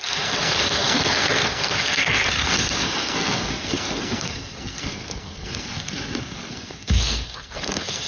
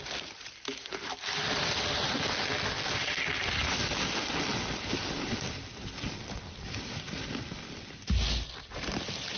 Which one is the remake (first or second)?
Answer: first